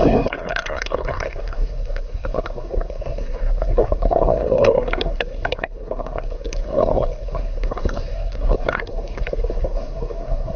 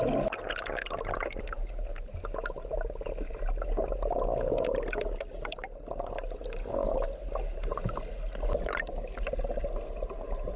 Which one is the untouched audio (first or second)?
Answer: second